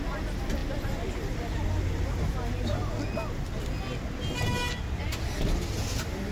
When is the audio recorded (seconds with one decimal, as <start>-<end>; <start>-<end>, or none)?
0.0-6.3